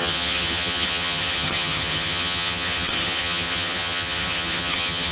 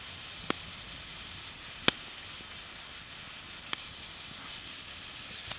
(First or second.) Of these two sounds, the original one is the second